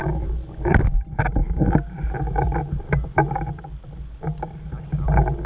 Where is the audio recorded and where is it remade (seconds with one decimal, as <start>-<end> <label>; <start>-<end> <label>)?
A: 0.0-5.5 recorded